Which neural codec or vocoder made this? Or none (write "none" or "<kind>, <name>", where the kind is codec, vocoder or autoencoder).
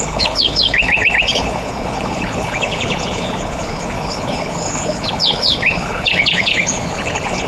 codec, HILCodec